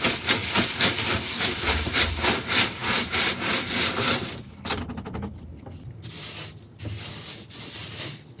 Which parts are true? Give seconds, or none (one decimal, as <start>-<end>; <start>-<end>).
0.0-0.4; 2.1-2.8; 6.8-8.4